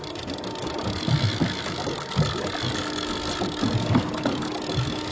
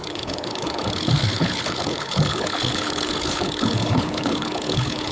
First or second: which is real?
first